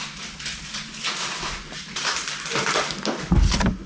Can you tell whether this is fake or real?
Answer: real